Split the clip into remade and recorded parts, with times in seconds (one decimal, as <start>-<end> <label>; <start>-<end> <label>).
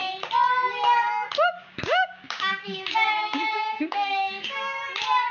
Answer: 0.0-1.6 recorded; 1.6-4.8 remade; 4.8-5.3 recorded